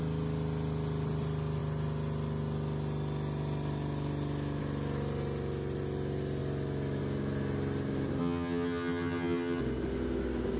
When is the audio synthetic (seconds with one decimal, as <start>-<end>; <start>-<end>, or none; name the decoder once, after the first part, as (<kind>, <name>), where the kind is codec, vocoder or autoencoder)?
8.2-9.6 (vocoder, HiFi-GAN)